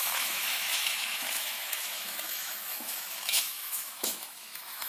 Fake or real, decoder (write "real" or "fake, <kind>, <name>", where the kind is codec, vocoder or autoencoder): fake, autoencoder, DAC-VAE